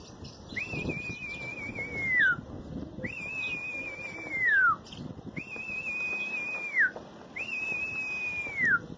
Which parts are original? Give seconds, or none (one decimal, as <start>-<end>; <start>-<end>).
1.5-2.2

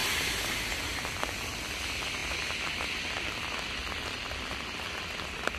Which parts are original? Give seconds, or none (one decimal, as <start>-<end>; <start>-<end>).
0.0-5.6

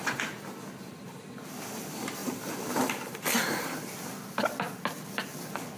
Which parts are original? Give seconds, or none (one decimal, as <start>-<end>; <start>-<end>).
0.0-2.2; 3.2-5.8

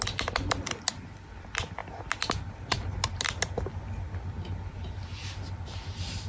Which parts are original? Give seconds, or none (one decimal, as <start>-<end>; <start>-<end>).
0.0-6.3

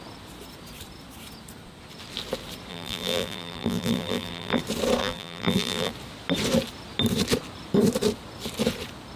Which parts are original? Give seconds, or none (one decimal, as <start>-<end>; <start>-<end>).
0.0-2.7; 4.6-5.0; 5.9-9.2

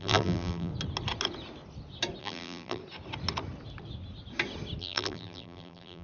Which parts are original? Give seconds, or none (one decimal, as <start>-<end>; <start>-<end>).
0.7-2.2; 2.8-4.8

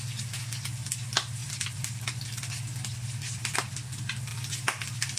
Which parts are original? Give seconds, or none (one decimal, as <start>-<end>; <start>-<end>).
0.0-1.4; 2.1-2.9; 3.7-5.2